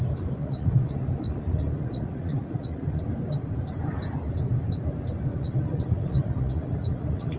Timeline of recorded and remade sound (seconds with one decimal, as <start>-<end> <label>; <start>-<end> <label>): 0.0-0.4 recorded; 0.4-3.0 remade; 3.0-5.3 recorded; 5.3-7.4 remade